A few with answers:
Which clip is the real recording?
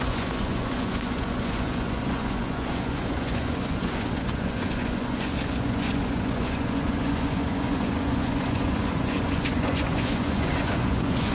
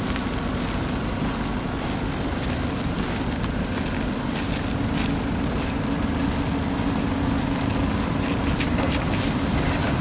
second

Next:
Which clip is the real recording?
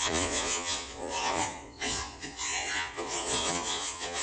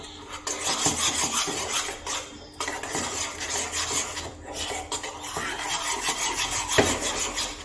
second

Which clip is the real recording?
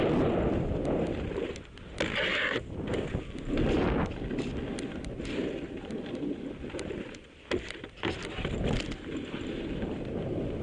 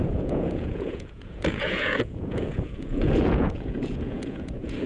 first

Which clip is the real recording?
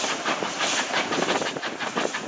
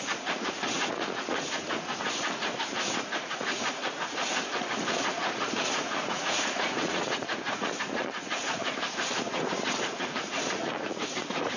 first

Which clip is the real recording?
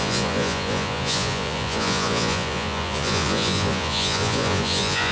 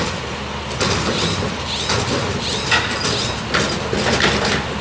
second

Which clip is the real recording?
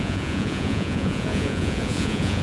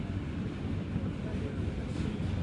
second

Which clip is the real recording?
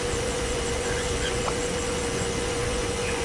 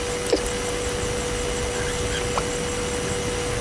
second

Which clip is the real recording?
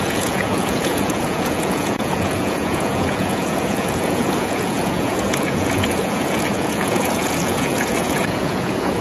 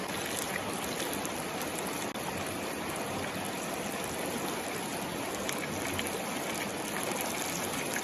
second